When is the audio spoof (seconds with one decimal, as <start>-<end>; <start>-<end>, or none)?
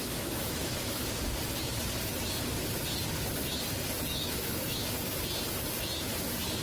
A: 0.0-1.0; 4.1-4.9